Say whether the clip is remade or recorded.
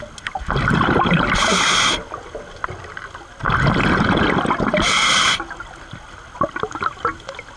recorded